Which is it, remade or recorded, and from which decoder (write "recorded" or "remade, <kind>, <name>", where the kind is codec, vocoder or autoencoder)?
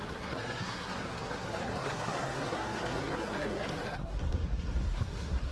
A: remade, codec, SNAC